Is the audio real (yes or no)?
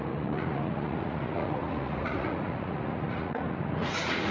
no